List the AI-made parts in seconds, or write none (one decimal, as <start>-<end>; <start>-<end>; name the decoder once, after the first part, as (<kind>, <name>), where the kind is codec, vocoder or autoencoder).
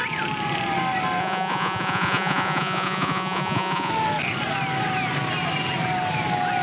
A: 1.2-3.9 (vocoder, Vocos)